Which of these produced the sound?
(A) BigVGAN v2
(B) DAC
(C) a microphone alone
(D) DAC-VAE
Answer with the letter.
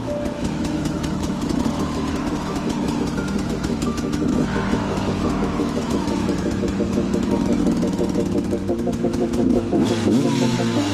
D